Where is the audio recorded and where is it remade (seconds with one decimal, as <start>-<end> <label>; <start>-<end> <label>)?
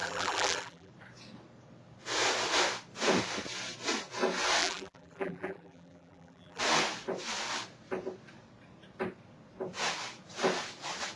0.0-0.9 remade; 0.9-4.6 recorded; 4.6-6.6 remade; 6.6-11.2 recorded